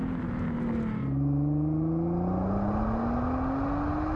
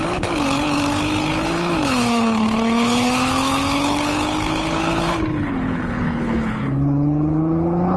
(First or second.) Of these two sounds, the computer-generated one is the second